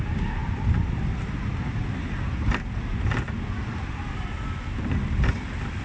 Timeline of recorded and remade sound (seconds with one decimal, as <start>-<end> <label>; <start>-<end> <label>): 0.0-5.8 recorded